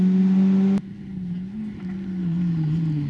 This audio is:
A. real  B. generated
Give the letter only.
A